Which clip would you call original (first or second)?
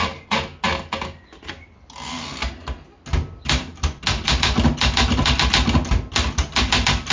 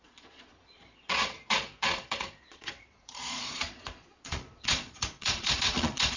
first